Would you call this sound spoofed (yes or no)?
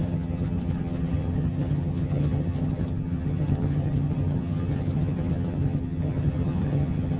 yes